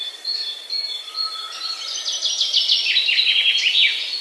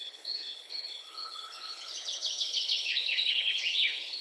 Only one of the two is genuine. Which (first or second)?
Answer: first